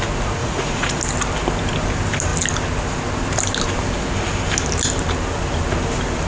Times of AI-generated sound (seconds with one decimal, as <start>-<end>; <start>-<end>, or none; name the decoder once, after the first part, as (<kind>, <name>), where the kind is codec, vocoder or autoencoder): 0.4-1.0 (vocoder, Vocos)